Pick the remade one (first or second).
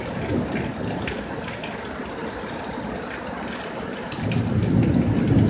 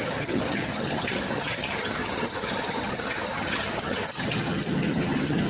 second